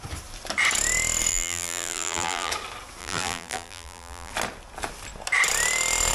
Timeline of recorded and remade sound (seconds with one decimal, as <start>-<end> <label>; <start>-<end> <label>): 0.0-1.3 recorded; 1.3-2.5 remade; 2.5-3.0 recorded; 3.0-4.3 remade; 4.3-6.1 recorded